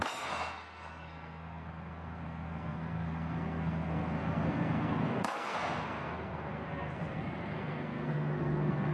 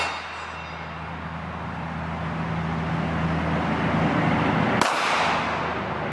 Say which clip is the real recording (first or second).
second